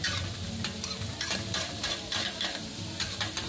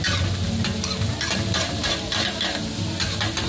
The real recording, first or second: second